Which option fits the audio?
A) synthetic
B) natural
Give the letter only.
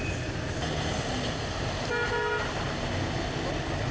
B